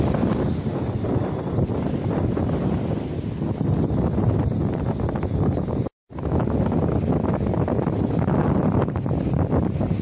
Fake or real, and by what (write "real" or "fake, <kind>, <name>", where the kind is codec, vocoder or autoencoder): real